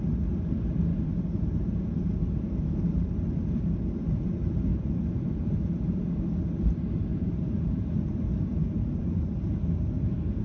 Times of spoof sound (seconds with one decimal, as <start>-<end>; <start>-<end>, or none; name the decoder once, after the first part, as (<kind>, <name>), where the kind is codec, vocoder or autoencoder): 0.9-4.2 (vocoder, BigVGAN v2); 4.7-6.3; 7.1-10.4

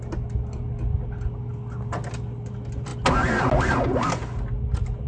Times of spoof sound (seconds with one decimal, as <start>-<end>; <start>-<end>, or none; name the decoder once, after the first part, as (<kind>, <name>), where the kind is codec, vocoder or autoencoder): none